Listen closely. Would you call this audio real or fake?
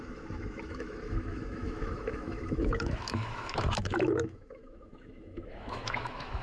fake